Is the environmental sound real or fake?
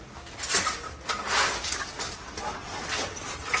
real